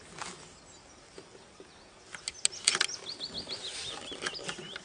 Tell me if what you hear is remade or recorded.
recorded